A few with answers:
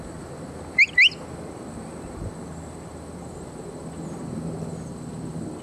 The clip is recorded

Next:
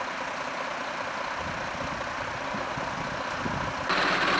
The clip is recorded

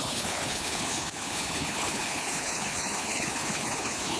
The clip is remade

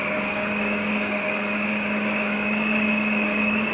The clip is remade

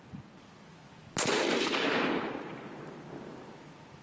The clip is recorded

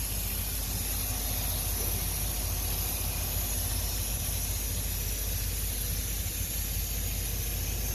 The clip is recorded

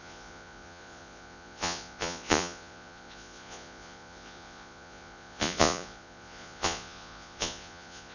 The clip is remade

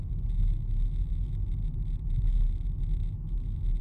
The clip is recorded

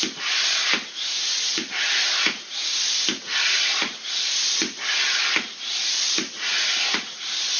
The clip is recorded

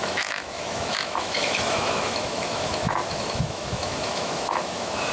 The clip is remade